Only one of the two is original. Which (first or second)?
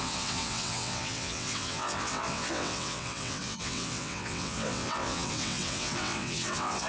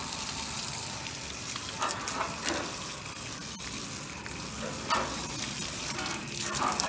second